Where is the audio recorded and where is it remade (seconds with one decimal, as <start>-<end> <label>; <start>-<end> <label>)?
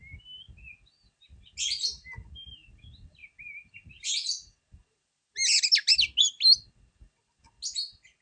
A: 0.0-8.2 recorded